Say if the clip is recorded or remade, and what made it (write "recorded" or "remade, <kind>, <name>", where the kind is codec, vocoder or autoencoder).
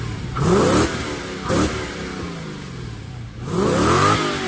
recorded